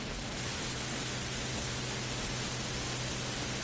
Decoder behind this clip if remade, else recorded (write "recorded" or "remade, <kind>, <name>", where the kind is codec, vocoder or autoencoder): recorded